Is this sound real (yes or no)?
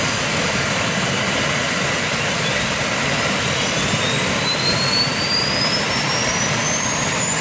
no